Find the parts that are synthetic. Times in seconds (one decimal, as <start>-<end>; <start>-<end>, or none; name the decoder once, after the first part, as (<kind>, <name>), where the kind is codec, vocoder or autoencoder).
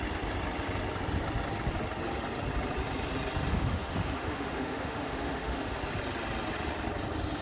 3.5-5.7 (autoencoder, DAC-VAE)